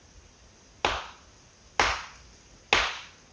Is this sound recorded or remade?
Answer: recorded